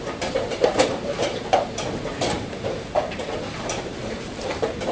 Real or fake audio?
fake